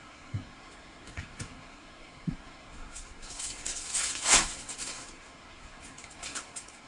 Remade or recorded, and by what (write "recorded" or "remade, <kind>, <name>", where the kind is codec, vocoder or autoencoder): remade, codec, SNAC